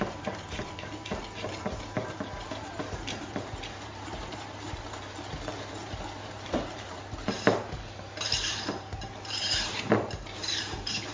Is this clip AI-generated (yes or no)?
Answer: yes